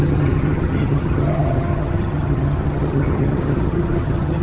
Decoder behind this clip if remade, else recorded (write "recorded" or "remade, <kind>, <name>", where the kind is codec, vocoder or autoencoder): remade, vocoder, HiFi-GAN